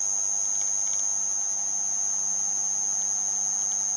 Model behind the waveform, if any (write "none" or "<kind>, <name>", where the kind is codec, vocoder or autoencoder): none